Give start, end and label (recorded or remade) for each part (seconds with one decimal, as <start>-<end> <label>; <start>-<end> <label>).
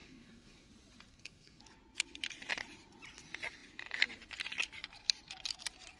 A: 0.0-0.7 remade; 0.7-1.1 recorded; 1.1-1.6 remade; 1.6-6.0 recorded